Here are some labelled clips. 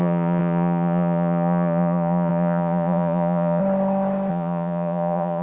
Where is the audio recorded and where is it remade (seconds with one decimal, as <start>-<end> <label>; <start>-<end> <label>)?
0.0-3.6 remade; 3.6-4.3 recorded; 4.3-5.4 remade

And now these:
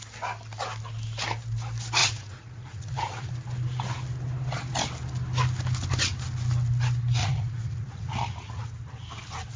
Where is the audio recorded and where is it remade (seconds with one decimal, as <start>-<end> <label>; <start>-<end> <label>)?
0.0-2.0 recorded; 2.0-3.3 remade; 3.3-7.2 recorded; 7.2-8.7 remade; 8.7-9.6 recorded

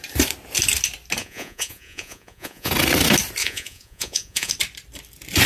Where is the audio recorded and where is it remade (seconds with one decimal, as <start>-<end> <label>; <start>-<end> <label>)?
0.0-1.2 recorded; 1.2-2.7 remade; 2.7-3.4 recorded; 3.4-4.5 remade; 4.5-5.5 recorded

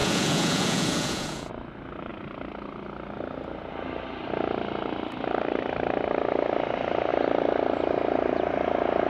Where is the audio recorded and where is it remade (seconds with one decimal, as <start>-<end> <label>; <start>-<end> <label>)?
0.0-1.5 remade; 1.5-9.1 recorded

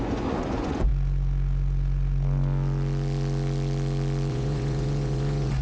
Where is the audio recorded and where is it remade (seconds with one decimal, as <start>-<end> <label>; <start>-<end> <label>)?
0.0-0.9 remade; 0.9-4.3 recorded; 4.3-5.6 remade

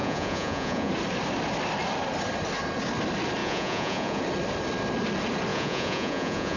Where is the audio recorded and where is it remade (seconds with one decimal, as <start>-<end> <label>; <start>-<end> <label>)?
0.0-0.9 remade; 0.9-3.4 recorded; 3.4-4.2 remade; 4.2-5.5 recorded; 5.5-6.6 remade

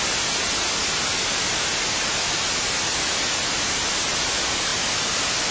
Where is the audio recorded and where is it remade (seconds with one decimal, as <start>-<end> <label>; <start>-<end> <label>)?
0.0-5.5 recorded

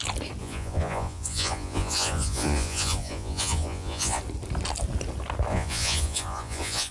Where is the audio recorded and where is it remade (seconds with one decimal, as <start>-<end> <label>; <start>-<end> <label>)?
0.0-0.4 recorded; 0.4-4.2 remade; 4.2-5.5 recorded; 5.5-6.9 remade